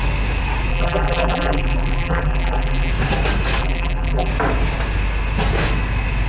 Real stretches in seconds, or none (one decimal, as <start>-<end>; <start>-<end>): 0.0-0.7; 2.9-3.6; 4.3-6.3